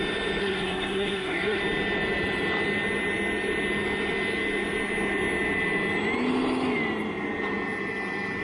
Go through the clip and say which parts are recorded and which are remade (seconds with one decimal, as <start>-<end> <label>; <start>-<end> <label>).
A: 0.0-0.4 recorded; 0.4-1.6 remade; 1.6-8.4 recorded